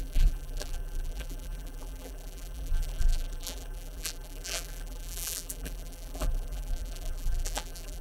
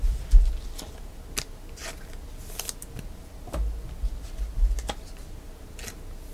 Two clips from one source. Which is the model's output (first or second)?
first